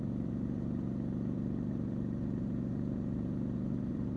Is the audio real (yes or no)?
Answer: no